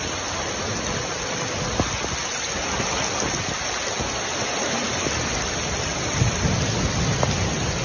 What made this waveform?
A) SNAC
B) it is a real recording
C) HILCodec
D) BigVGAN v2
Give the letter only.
B